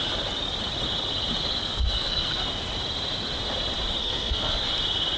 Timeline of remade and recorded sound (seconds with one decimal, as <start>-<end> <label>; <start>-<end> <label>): 0.0-1.6 recorded; 1.6-2.5 remade; 2.5-4.0 recorded; 4.0-4.7 remade; 4.7-5.2 recorded